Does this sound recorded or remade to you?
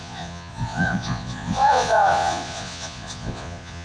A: remade